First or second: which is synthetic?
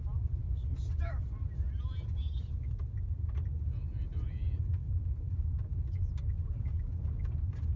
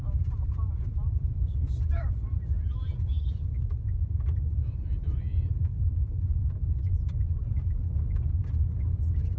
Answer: second